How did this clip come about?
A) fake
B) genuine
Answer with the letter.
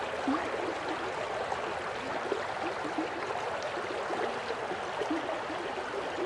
B